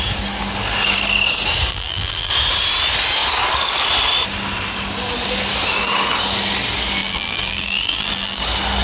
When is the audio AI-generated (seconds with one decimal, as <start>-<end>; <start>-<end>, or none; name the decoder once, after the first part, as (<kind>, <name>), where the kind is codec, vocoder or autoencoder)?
1.7-2.3 (vocoder, BigVGAN v2); 7.0-8.4